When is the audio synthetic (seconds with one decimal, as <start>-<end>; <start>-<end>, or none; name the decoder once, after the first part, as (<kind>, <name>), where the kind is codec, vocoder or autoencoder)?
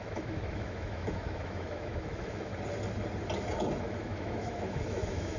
0.0-2.5 (autoencoder, DAC-VAE); 3.8-5.4